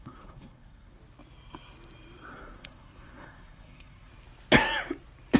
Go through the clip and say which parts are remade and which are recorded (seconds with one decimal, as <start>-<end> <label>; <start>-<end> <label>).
0.0-1.0 remade; 1.0-2.3 recorded; 2.3-4.1 remade; 4.1-5.4 recorded